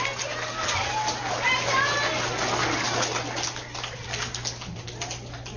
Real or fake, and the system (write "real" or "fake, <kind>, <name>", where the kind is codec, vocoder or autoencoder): real